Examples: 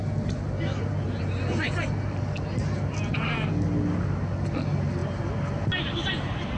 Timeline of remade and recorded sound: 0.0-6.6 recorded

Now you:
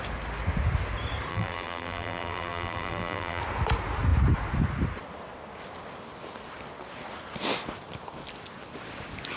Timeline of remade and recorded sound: 0.0-1.3 recorded; 1.3-3.4 remade; 3.4-9.4 recorded

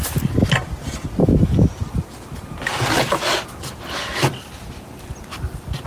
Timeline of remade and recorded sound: 0.0-1.2 recorded; 1.2-1.7 remade; 1.7-5.9 recorded

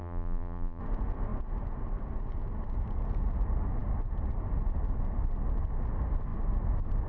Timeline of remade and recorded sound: 0.0-0.8 remade; 0.8-7.1 recorded